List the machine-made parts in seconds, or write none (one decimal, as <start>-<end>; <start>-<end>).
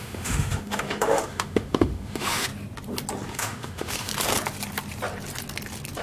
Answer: 0.0-2.5; 3.3-4.1